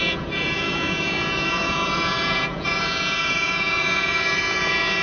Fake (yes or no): yes